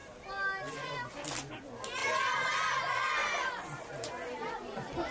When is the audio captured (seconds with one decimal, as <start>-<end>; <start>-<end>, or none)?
0.0-2.0; 2.5-3.2; 4.1-5.1